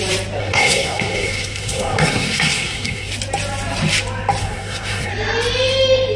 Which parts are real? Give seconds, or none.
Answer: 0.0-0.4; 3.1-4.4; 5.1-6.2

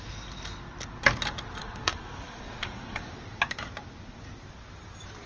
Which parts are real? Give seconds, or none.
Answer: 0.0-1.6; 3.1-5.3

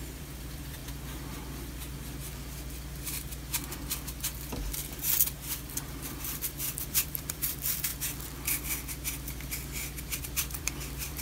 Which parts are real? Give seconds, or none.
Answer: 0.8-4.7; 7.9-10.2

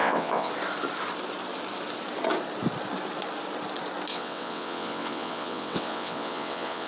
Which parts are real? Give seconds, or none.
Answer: 0.5-4.1